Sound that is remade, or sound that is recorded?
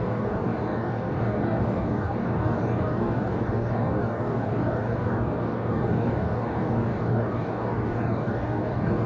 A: remade